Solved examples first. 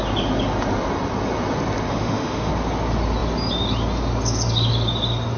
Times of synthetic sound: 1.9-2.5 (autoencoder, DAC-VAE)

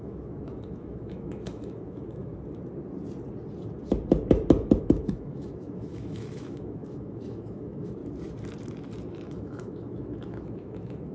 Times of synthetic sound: 0.0-2.3 (autoencoder, DAC-VAE); 4.8-8.0; 9.1-11.1

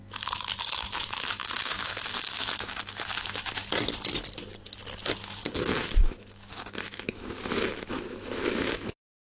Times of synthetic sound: 0.0-3.6 (autoencoder, DAC-VAE); 5.2-9.3

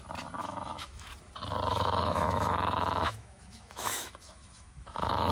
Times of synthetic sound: 0.4-1.1 (autoencoder, DAC-VAE); 1.7-5.3

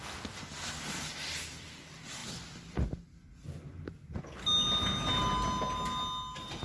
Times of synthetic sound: none